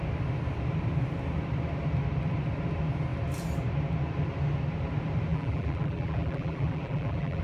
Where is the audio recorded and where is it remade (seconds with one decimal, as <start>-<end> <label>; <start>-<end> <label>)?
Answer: 0.0-5.3 recorded; 5.3-7.4 remade